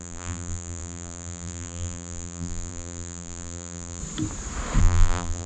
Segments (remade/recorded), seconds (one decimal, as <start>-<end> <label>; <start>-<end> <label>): 0.0-4.0 remade; 4.0-4.8 recorded; 4.8-5.5 remade